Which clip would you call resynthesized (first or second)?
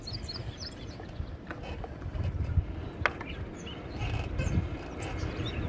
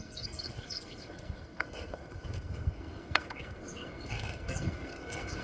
second